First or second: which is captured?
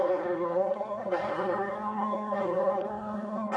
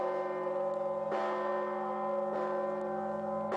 second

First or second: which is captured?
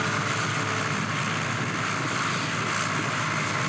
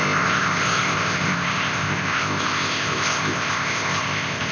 first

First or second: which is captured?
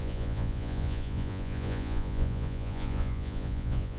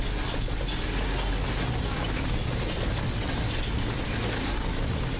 second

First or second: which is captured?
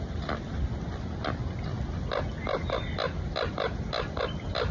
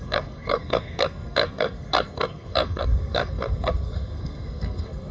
first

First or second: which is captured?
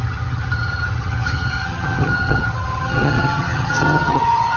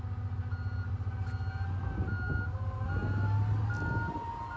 second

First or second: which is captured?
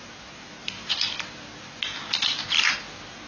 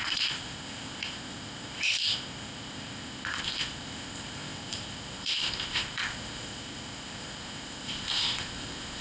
first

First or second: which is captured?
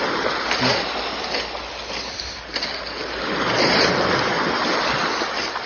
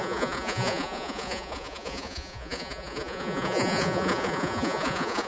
first